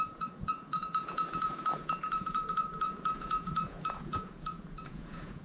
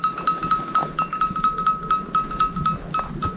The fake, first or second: first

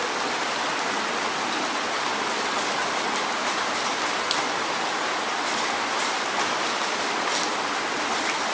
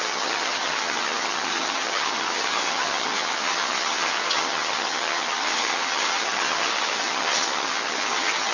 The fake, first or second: second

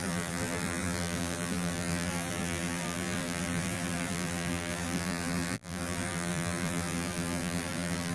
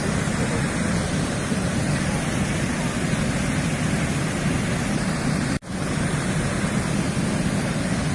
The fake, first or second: first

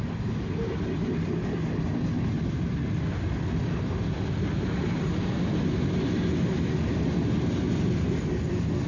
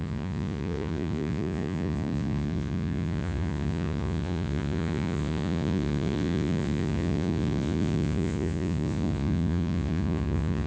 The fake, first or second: second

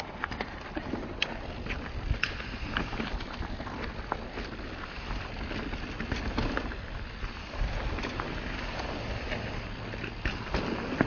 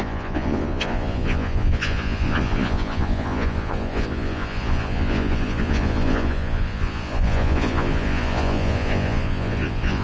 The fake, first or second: second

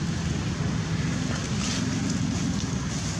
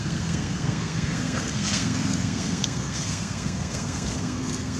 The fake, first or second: second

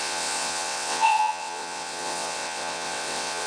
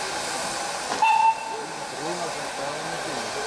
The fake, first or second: first